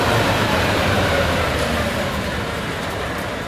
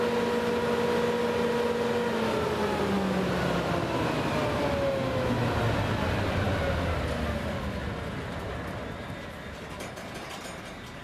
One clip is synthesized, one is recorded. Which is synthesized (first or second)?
first